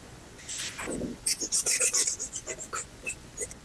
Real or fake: fake